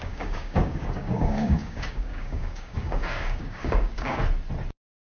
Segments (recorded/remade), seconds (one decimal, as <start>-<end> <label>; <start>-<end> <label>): 0.0-4.2 remade; 4.2-5.1 recorded